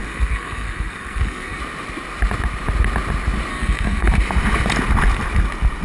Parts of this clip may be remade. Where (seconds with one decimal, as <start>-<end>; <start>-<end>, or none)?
0.0-1.6; 3.5-4.1